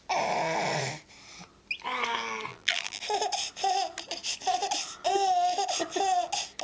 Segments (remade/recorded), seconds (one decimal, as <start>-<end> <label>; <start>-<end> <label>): 0.0-2.5 recorded; 2.5-3.0 remade; 3.0-6.6 recorded